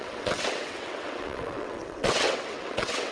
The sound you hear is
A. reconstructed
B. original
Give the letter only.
A